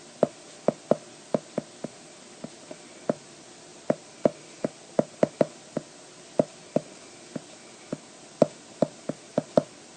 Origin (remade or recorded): recorded